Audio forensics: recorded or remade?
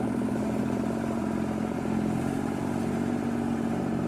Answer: remade